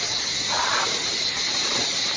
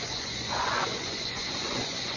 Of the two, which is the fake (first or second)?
second